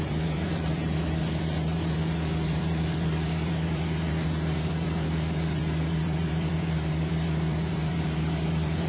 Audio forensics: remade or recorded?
remade